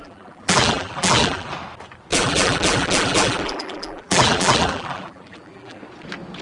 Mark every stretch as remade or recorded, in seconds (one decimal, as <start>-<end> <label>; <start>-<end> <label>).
0.0-1.5 remade; 1.5-2.1 recorded; 2.1-5.8 remade; 5.8-6.4 recorded